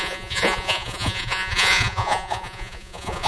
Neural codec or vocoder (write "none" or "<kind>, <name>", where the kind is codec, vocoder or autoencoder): vocoder, Vocos